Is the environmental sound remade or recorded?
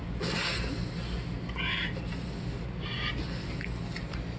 recorded